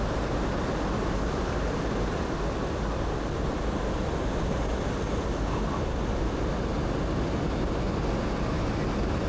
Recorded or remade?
recorded